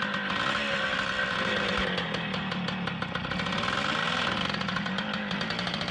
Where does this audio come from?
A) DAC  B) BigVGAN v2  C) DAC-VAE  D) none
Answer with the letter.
D